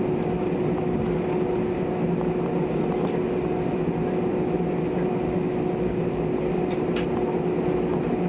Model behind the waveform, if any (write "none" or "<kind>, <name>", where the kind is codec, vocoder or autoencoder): none